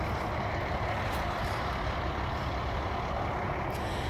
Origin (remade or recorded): recorded